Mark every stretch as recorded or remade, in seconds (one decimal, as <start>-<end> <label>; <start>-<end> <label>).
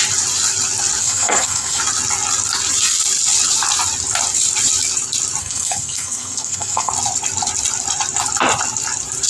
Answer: 0.0-1.0 recorded; 1.0-1.8 remade; 1.8-5.4 recorded; 5.4-6.9 remade; 6.9-9.3 recorded